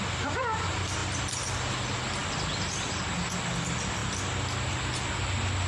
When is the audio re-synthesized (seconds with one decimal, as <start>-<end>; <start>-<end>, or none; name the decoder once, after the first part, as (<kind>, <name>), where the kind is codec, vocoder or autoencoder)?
2.2-2.9 (vocoder, BigVGAN v2)